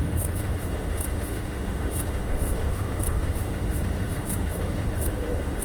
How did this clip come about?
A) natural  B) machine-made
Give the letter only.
B